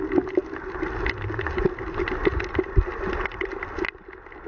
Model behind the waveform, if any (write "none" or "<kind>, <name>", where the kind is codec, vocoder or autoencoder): none